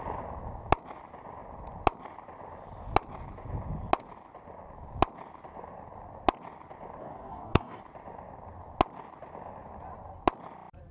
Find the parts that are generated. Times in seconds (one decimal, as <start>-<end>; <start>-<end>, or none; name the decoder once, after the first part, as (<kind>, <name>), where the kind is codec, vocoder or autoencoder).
7.0-7.8 (codec, DAC)